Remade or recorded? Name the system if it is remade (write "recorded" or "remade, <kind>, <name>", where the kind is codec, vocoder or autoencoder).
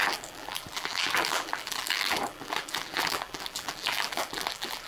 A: remade, vocoder, BigVGAN v2